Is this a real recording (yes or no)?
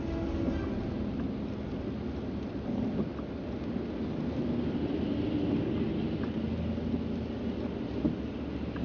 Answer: yes